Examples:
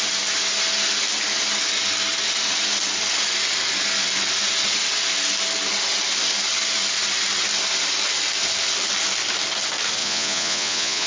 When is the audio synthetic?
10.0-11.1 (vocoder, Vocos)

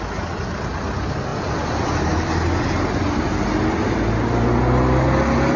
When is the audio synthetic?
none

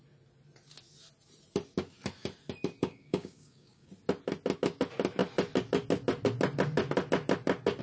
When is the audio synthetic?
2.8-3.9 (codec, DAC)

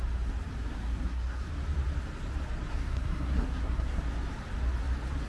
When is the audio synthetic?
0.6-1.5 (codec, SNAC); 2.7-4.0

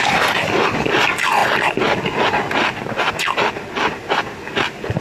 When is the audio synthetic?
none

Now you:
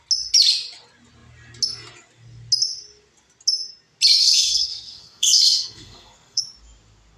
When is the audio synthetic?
4.1-6.4 (codec, SNAC)

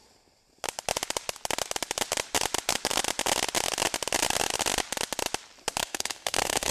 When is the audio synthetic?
5.8-6.7 (codec, SNAC)

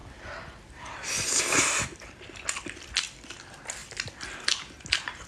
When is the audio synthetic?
none